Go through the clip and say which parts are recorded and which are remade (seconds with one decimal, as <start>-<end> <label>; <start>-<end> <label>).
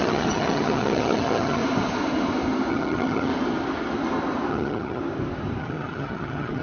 0.0-1.6 remade; 1.6-2.7 recorded; 2.7-3.3 remade; 3.3-4.5 recorded; 4.5-5.0 remade; 5.0-5.6 recorded; 5.6-6.6 remade